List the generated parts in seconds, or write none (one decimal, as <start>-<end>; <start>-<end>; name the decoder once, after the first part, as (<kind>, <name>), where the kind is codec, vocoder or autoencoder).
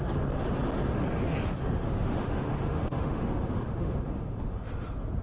1.5-4.6 (autoencoder, DAC-VAE)